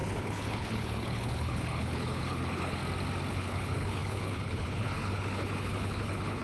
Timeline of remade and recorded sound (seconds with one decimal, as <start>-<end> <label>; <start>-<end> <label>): 0.0-2.8 remade; 2.8-3.3 recorded; 3.3-6.4 remade